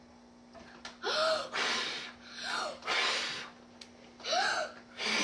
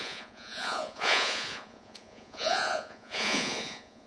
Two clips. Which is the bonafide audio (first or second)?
first